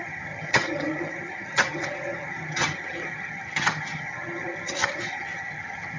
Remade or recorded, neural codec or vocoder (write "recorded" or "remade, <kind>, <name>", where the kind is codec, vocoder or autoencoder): remade, vocoder, HiFi-GAN